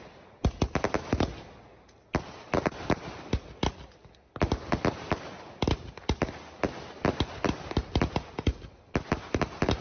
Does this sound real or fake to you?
real